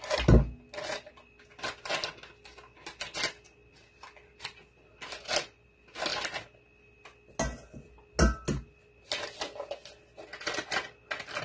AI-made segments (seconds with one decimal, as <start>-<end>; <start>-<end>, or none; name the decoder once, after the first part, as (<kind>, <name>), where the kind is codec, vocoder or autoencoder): none